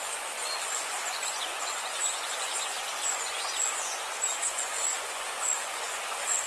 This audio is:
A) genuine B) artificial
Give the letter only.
B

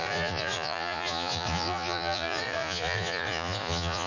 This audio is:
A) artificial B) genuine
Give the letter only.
A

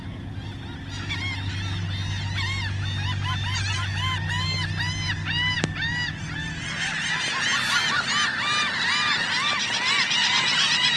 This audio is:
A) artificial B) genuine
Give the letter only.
B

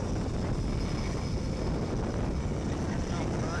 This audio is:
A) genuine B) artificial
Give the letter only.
A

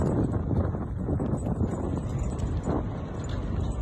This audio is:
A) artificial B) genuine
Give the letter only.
B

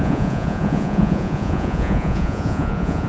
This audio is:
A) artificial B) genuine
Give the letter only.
A